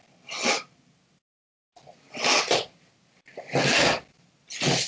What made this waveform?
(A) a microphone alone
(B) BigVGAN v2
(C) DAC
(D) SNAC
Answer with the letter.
A